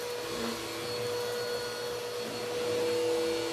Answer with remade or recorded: recorded